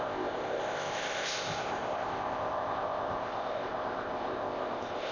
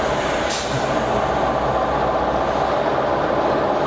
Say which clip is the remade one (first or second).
first